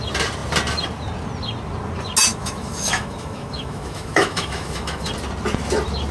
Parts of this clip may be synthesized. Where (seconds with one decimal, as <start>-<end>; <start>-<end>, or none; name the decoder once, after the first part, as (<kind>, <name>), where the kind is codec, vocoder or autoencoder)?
2.3-5.1 (autoencoder, DAC-VAE)